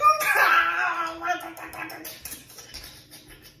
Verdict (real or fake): real